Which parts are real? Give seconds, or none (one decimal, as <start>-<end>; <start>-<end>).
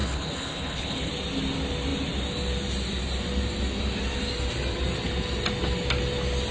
1.1-6.5